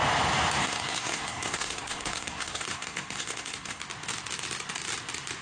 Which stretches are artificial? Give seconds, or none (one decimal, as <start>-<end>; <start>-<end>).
0.6-3.8